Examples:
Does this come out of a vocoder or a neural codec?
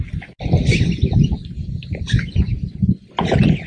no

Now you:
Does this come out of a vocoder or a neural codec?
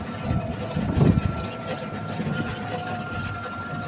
no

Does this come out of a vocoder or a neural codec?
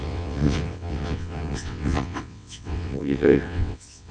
yes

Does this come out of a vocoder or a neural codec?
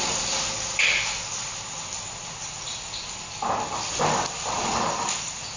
no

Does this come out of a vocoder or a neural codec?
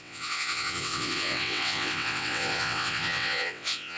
yes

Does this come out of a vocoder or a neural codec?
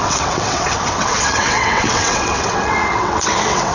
yes